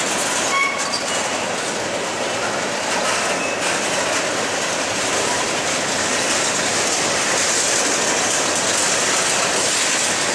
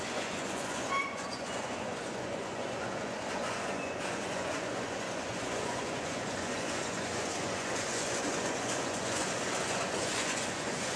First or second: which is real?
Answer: first